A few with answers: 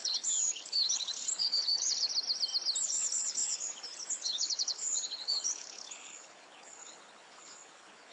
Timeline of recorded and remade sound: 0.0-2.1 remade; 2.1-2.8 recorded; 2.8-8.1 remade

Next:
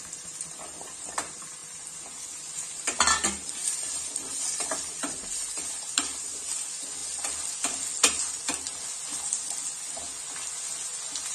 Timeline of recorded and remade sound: 0.0-3.6 recorded; 3.6-6.2 remade; 6.2-11.3 recorded

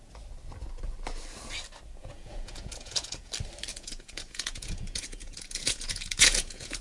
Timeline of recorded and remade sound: 0.0-2.0 recorded; 2.0-3.3 remade; 3.3-3.7 recorded; 3.7-6.8 remade

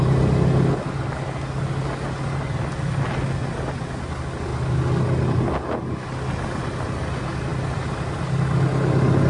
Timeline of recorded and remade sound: 0.0-9.3 recorded

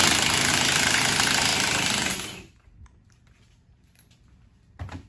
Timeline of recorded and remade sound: 0.0-0.5 recorded; 0.5-1.5 remade; 1.5-3.3 recorded; 3.3-5.1 remade

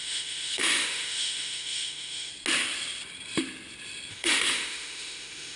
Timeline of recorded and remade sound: 0.0-2.3 remade; 2.3-4.1 recorded; 4.1-5.6 remade

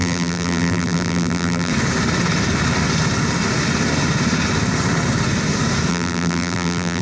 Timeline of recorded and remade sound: 0.0-1.7 remade; 1.7-5.9 recorded; 5.9-7.0 remade